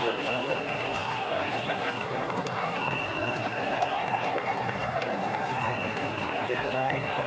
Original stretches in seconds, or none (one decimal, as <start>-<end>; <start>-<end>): none